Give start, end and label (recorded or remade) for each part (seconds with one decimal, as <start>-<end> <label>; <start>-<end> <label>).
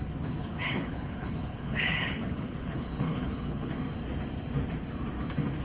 0.0-0.4 recorded; 0.4-3.7 remade; 3.7-5.6 recorded